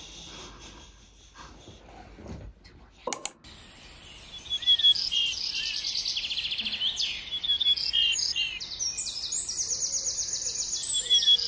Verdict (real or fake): real